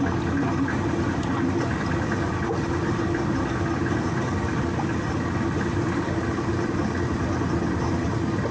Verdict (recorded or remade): recorded